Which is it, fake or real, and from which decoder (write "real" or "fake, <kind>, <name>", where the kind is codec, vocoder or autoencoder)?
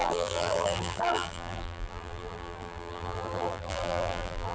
fake, vocoder, BigVGAN v2